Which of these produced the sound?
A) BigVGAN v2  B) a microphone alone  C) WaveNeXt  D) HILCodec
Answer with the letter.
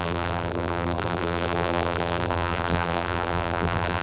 A